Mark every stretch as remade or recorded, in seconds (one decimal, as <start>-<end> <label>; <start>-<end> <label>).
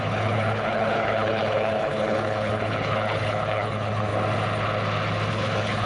0.0-4.1 remade; 4.1-5.3 recorded; 5.3-5.9 remade